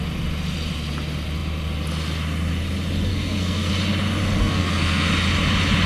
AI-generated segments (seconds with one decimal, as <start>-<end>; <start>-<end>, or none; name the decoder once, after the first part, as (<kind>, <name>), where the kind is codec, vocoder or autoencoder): 3.1-3.7 (codec, SNAC); 4.4-5.1